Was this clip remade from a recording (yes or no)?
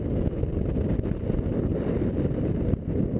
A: no